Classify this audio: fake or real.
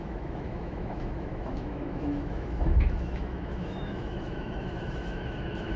fake